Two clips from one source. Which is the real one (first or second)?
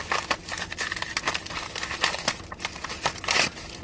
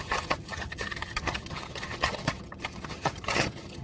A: first